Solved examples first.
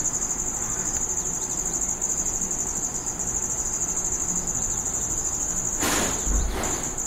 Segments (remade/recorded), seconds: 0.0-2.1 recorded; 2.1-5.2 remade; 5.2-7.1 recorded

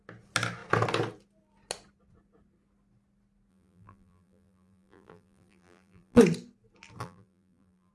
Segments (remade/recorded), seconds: 0.0-3.5 recorded; 3.5-6.2 remade; 6.2-7.0 recorded; 7.0-7.9 remade

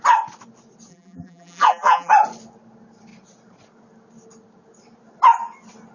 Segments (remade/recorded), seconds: 0.0-0.9 recorded; 0.9-2.1 remade; 2.1-5.9 recorded

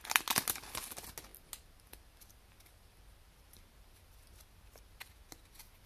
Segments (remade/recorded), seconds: 0.0-5.9 recorded

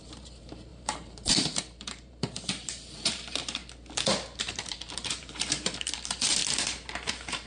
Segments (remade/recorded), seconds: 0.0-3.6 remade; 3.6-4.4 recorded; 4.4-6.4 remade; 6.4-7.1 recorded; 7.1-7.5 remade

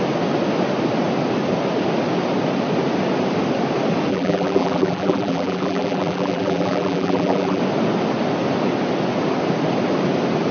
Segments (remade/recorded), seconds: 0.0-4.1 recorded; 4.1-7.6 remade; 7.6-10.5 recorded